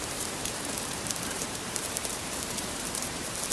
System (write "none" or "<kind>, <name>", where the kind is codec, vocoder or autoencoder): vocoder, BigVGAN v2